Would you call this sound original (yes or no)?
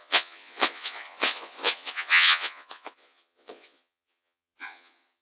no